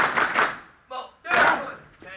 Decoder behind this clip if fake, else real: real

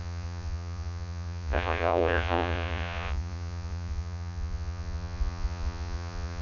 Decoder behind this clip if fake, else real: fake, vocoder, Vocos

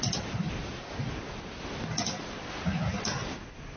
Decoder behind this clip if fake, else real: real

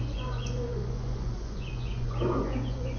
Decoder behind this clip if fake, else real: fake, vocoder, Vocos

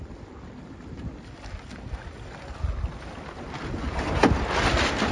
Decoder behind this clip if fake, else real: real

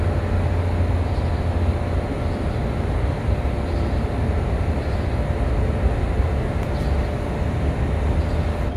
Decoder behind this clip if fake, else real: real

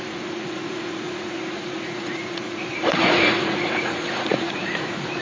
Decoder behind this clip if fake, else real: fake, vocoder, Vocos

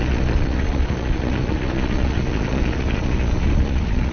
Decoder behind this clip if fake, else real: fake, vocoder, Vocos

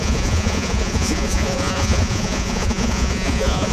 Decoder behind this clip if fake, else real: fake, vocoder, Vocos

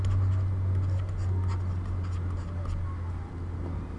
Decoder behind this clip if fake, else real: real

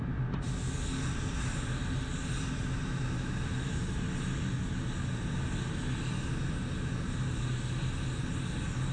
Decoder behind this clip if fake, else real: real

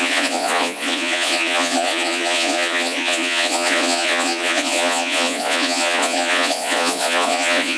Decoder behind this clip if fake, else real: fake, vocoder, Vocos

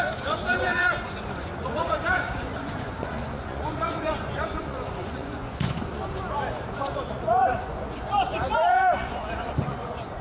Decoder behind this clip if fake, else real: fake, vocoder, Vocos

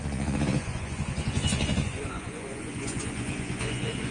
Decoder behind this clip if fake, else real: fake, vocoder, Vocos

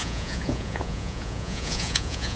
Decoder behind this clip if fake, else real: fake, vocoder, Vocos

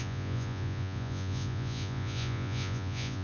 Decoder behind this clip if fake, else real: fake, vocoder, Vocos